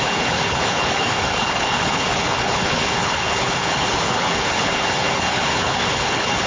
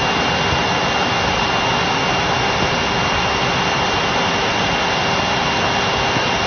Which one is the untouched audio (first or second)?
second